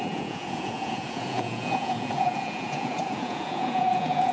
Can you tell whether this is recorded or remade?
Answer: remade